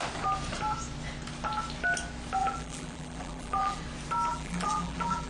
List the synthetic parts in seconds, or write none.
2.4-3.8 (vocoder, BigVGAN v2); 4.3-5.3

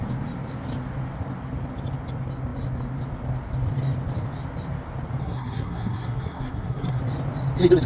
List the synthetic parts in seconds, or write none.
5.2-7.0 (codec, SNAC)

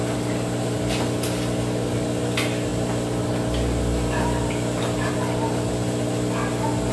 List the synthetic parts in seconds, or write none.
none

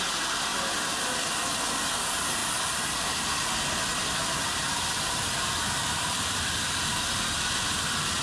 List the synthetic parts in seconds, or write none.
2.4-3.1 (vocoder, BigVGAN v2); 3.9-7.0

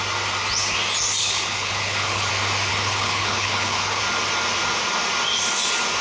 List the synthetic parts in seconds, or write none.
1.2-2.3 (codec, HILCodec); 2.7-4.0

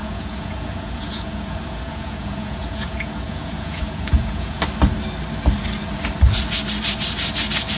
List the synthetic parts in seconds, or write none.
0.0-4.6 (vocoder, Vocos)

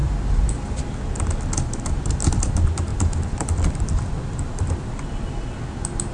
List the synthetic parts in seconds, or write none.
2.9-5.6 (vocoder, BigVGAN v2)

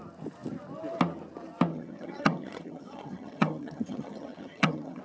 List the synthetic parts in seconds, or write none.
1.7-5.0 (vocoder, HiFi-GAN)